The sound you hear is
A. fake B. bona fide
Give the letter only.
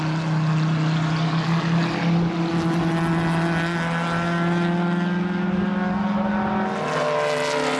B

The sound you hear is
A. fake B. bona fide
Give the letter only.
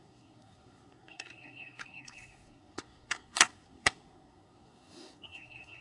A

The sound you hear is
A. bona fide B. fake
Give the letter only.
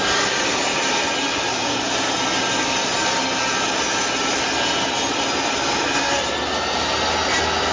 A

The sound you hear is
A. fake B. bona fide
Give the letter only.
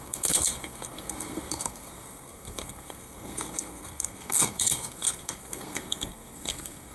A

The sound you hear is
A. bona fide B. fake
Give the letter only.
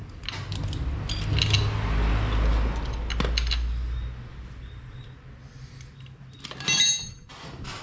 A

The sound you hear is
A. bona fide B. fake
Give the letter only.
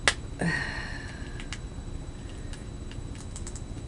A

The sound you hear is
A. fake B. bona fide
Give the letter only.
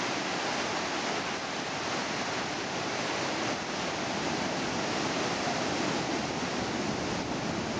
B